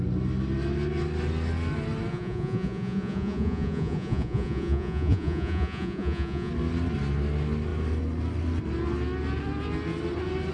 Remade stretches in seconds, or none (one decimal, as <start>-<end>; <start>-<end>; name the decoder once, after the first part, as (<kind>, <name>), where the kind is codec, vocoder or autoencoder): 2.1-6.5 (vocoder, Vocos)